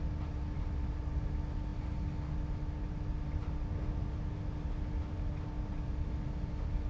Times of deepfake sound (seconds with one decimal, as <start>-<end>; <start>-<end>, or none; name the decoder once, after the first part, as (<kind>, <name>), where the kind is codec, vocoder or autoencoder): none